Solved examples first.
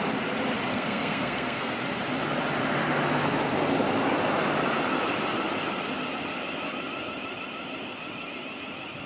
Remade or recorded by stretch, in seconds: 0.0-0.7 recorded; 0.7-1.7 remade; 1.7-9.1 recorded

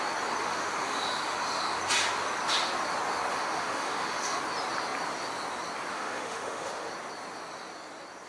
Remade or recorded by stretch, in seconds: 0.0-0.4 recorded; 0.4-1.8 remade; 1.8-3.3 recorded; 3.3-4.4 remade; 4.4-5.9 recorded; 5.9-6.9 remade; 6.9-8.3 recorded

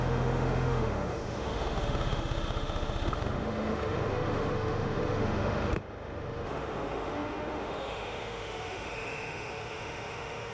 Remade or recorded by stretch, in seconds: 0.0-10.5 remade

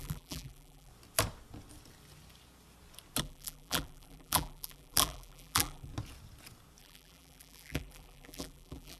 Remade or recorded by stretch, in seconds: 0.0-0.9 remade; 0.9-3.2 recorded; 3.2-5.9 remade; 5.9-6.8 recorded; 6.8-9.0 remade